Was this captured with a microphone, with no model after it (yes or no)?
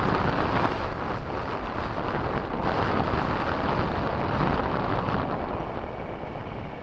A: yes